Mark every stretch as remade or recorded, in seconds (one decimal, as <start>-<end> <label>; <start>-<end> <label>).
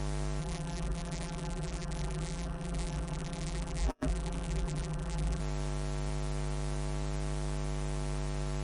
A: 0.0-0.4 recorded; 0.4-5.4 remade; 5.4-8.6 recorded